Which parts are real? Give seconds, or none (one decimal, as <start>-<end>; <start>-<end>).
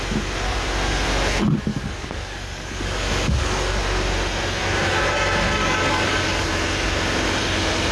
0.0-1.7; 3.8-5.6; 6.5-7.9